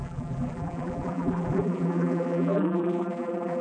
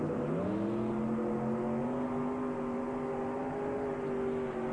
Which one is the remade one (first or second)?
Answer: first